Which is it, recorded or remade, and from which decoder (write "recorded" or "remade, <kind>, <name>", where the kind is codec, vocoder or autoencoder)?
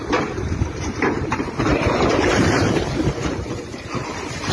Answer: remade, vocoder, BigVGAN v2